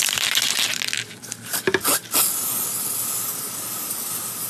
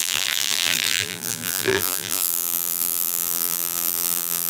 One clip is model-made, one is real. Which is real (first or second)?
first